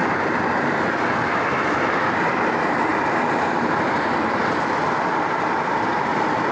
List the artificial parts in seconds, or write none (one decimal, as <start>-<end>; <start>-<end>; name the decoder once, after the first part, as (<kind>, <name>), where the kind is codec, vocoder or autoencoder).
1.4-6.5 (vocoder, BigVGAN v2)